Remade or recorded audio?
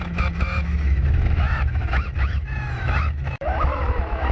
remade